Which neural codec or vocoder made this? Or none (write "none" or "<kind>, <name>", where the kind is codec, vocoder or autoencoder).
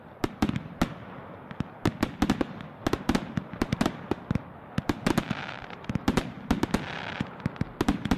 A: none